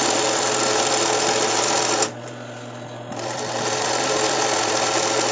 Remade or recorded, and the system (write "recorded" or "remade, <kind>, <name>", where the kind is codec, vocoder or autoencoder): recorded